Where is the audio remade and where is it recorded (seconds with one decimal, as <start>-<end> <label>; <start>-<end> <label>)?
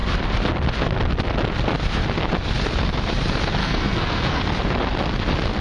0.0-3.6 recorded; 3.6-4.4 remade; 4.4-5.6 recorded